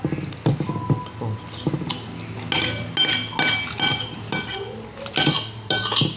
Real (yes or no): yes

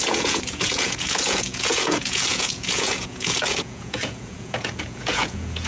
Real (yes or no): no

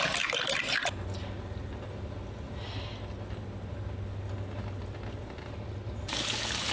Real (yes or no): yes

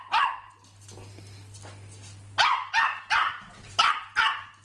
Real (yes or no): yes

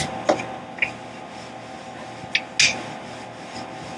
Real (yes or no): yes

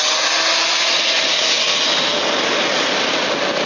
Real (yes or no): yes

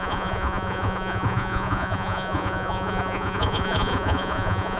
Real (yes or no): no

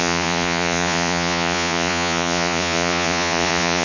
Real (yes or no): no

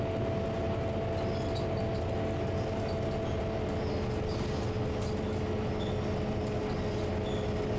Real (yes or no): yes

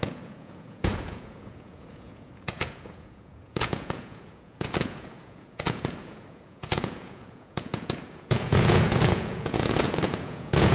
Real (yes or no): no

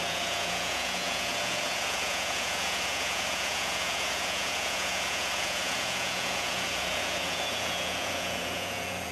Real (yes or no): no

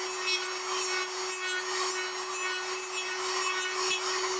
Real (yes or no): yes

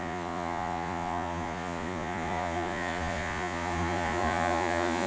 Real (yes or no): no